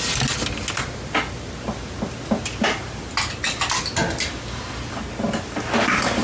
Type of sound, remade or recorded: recorded